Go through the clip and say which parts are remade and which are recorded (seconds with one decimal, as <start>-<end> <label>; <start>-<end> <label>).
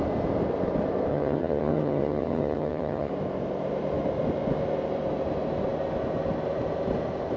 0.0-1.1 recorded; 1.1-3.1 remade; 3.1-7.4 recorded